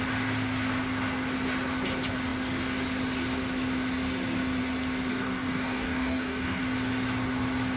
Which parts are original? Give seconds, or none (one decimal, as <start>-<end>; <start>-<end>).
0.0-5.1; 6.6-7.8